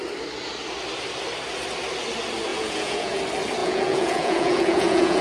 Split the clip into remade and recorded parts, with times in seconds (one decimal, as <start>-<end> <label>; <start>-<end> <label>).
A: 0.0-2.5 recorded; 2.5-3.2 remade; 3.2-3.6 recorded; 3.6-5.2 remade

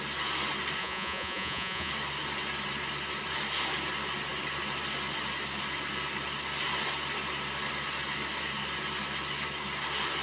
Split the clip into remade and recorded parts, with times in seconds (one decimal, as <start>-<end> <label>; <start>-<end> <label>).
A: 0.0-0.8 recorded; 0.8-1.9 remade; 1.9-10.2 recorded

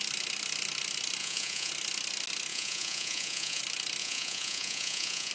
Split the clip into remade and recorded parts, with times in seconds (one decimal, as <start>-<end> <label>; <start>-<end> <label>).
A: 0.0-1.2 recorded; 1.2-1.7 remade; 1.7-2.5 recorded; 2.5-3.6 remade; 3.6-4.0 recorded; 4.0-5.3 remade

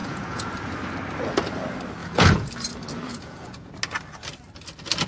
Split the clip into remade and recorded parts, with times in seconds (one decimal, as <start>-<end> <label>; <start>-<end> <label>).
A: 0.0-0.5 remade; 0.5-2.0 recorded; 2.0-2.5 remade; 2.5-3.1 recorded; 3.1-3.7 remade; 3.7-5.1 recorded